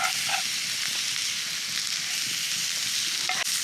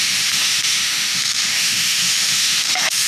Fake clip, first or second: second